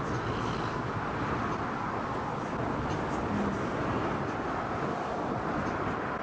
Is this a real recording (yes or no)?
yes